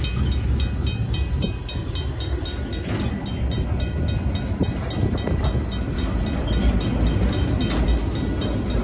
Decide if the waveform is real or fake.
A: real